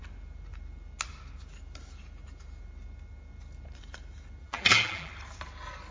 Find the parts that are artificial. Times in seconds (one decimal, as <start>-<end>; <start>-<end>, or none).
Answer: 4.4-5.1